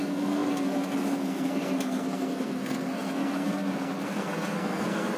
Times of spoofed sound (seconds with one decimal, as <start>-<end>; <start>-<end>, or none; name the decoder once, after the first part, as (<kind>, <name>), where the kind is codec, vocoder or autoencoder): 0.0-5.2 (codec, SNAC)